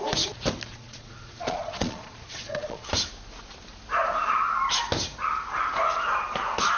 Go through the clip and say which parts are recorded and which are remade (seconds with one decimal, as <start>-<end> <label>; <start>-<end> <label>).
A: 0.0-0.7 recorded; 0.7-2.9 remade; 2.9-6.8 recorded